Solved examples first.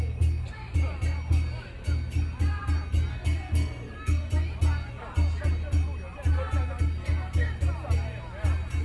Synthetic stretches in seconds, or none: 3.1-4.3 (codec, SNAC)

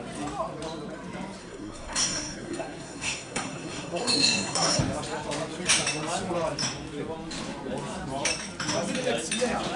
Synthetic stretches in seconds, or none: 1.4-4.8 (codec, SNAC)